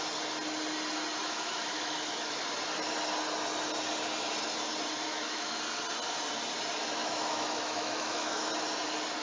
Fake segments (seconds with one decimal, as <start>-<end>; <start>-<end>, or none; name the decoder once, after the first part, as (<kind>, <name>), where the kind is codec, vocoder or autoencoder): 1.2-2.4 (autoencoder, DAC-VAE); 5.1-5.6; 7.0-8.5